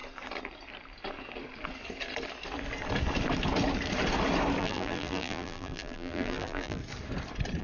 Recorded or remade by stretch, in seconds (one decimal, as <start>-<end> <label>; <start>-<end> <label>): 0.0-4.6 recorded; 4.6-6.8 remade; 6.8-7.6 recorded